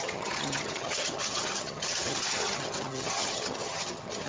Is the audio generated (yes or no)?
yes